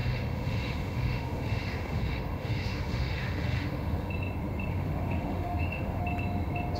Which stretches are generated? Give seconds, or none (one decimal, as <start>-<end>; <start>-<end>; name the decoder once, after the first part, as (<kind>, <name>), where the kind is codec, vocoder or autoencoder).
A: 0.0-4.1 (autoencoder, DAC-VAE); 4.7-6.0